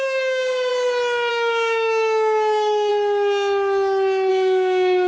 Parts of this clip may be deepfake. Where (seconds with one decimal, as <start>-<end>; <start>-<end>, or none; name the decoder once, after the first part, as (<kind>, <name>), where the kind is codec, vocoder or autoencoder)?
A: 0.0-0.7 (codec, DAC); 1.3-2.9; 4.3-5.1